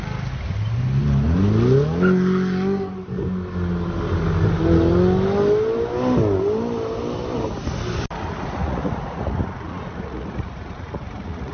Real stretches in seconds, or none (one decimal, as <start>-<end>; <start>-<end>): 0.0-8.2